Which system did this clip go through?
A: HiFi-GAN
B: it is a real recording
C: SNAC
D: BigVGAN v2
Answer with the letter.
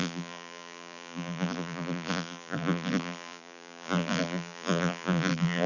D